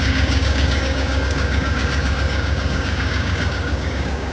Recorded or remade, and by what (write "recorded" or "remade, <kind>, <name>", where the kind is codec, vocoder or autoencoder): remade, codec, DAC